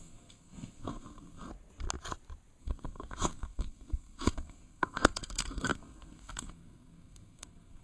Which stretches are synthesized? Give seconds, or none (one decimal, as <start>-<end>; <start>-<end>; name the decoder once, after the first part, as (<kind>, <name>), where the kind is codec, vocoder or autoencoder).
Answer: 0.0-1.5 (codec, SNAC); 2.6-7.8